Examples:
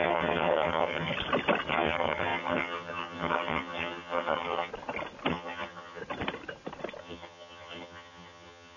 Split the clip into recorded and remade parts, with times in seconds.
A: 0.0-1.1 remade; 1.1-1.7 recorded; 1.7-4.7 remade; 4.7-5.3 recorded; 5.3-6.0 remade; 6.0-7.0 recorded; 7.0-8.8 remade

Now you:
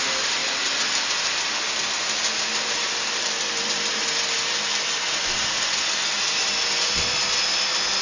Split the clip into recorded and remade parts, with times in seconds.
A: 0.0-8.0 recorded

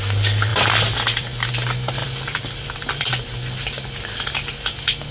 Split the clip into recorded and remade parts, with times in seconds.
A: 0.0-0.5 recorded; 0.5-1.5 remade; 1.5-2.0 recorded; 2.0-3.1 remade; 3.1-5.1 recorded